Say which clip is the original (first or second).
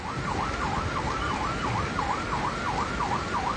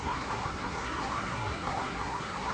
first